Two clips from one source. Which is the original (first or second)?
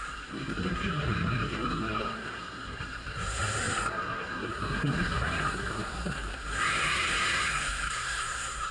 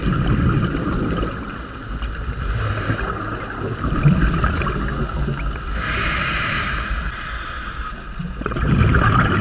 second